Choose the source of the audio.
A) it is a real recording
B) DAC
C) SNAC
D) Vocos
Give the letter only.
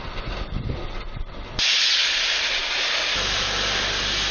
A